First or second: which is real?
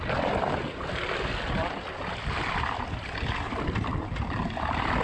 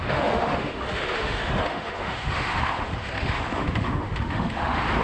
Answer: first